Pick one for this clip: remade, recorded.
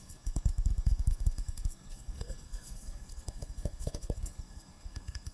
remade